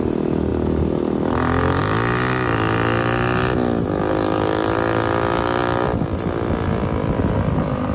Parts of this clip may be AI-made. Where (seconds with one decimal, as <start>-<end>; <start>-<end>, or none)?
none